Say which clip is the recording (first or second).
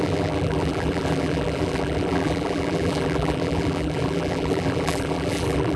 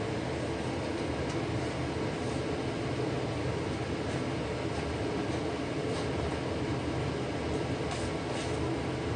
second